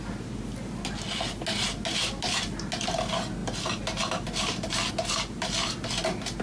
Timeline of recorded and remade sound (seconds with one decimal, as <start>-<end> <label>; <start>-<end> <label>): 0.0-6.4 recorded